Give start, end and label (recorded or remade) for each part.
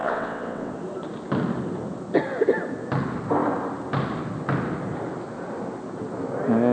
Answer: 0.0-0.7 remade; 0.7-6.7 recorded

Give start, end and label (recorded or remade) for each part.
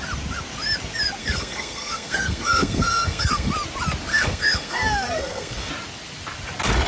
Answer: 0.0-1.2 recorded; 1.2-3.5 remade; 3.5-4.1 recorded; 4.1-5.7 remade; 5.7-6.9 recorded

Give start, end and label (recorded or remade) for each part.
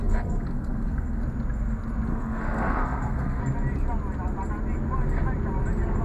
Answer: 0.0-1.2 remade; 1.2-2.1 recorded; 2.1-3.4 remade; 3.4-6.0 recorded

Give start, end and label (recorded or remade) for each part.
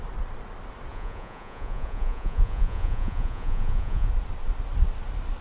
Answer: 0.0-0.9 recorded; 0.9-4.1 remade; 4.1-5.4 recorded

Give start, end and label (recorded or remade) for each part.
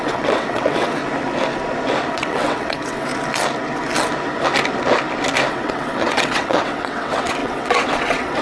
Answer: 0.0-1.0 remade; 1.0-2.1 recorded; 2.1-3.1 remade; 3.1-5.5 recorded; 5.5-8.4 remade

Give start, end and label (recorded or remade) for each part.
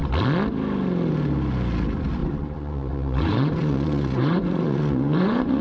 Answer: 0.0-2.2 recorded; 2.2-5.6 remade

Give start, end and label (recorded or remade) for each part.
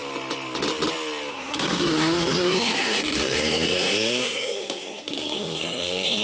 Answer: 0.0-1.3 recorded; 1.3-6.2 remade